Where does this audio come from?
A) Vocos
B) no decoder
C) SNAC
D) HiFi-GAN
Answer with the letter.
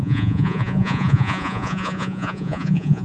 A